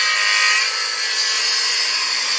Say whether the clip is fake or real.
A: real